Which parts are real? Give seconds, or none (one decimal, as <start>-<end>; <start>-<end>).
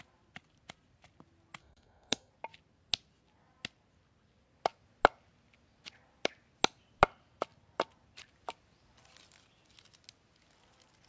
0.0-1.6; 2.3-11.1